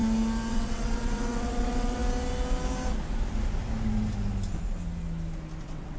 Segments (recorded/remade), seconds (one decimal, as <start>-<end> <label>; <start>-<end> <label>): 0.0-0.5 recorded; 0.5-2.0 remade; 2.0-5.6 recorded; 5.6-6.0 remade